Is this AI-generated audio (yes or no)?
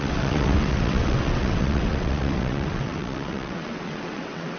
yes